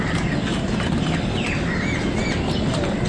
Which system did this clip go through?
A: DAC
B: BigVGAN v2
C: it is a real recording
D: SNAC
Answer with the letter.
C